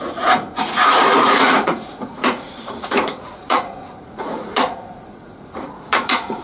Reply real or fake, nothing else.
fake